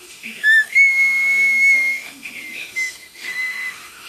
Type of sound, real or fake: fake